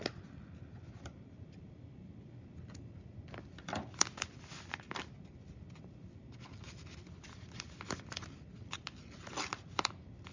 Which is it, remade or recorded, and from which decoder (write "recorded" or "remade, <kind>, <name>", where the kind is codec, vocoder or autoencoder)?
recorded